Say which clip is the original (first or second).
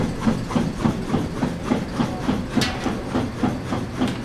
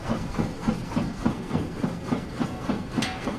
first